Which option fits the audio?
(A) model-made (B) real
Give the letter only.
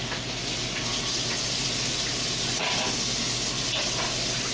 B